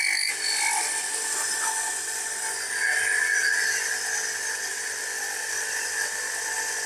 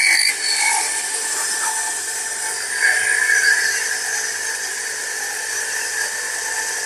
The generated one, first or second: second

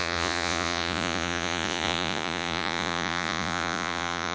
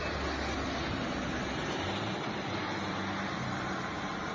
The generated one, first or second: first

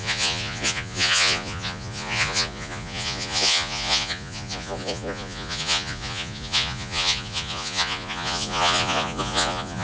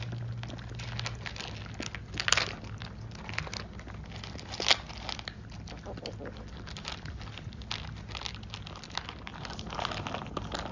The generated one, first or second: first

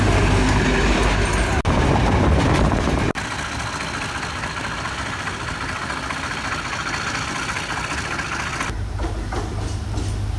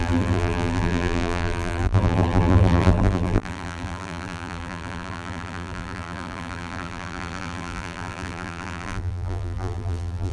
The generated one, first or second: second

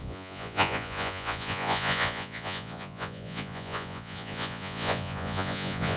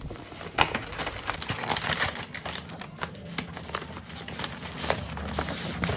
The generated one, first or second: first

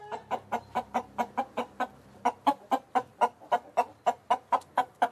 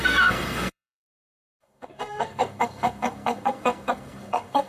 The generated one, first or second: second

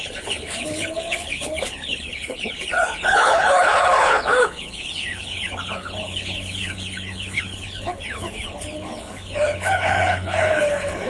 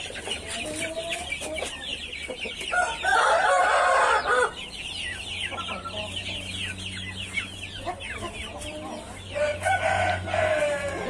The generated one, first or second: first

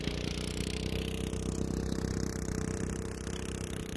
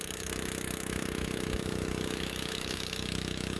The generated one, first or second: second